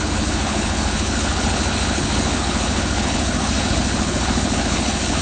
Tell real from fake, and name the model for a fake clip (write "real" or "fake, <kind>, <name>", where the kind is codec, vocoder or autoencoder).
fake, codec, HILCodec